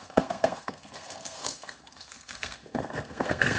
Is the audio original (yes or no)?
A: no